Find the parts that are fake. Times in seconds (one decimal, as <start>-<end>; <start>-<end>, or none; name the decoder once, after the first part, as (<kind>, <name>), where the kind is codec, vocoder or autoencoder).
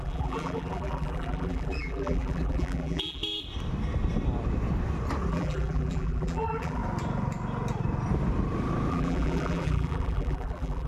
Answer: 0.0-3.2 (vocoder, BigVGAN v2); 5.3-6.8; 8.9-10.9